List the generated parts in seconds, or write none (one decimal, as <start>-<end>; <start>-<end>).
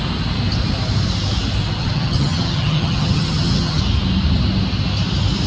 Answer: 1.8-3.8